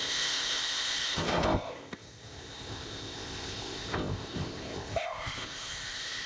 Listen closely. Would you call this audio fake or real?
fake